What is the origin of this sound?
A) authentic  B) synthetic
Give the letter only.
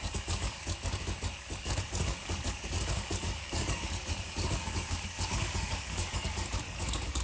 B